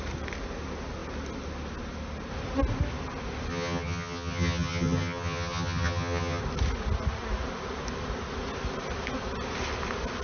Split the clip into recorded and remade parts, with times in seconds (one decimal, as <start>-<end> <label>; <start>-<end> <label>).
0.0-3.5 recorded; 3.5-6.4 remade; 6.4-10.2 recorded